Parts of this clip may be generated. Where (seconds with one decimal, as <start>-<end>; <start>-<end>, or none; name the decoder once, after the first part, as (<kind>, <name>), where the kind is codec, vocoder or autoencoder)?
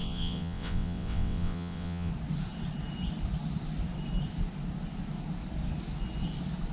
0.0-2.1 (vocoder, WaveNeXt)